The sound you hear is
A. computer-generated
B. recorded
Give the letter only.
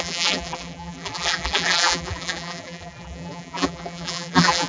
A